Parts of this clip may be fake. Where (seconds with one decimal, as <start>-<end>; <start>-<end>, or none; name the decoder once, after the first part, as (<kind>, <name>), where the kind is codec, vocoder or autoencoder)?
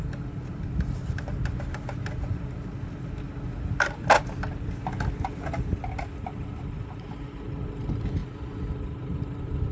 none